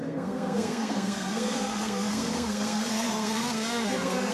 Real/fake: fake